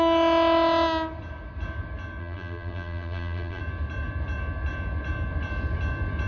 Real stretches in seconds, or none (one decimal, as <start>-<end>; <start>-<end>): 0.0-2.2; 3.6-6.3